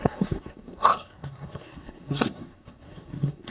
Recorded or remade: remade